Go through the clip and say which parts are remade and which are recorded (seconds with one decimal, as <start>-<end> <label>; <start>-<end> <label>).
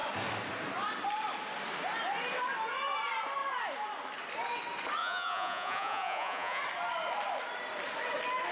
0.0-5.0 recorded; 5.0-6.6 remade; 6.6-8.5 recorded